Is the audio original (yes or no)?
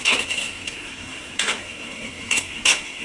no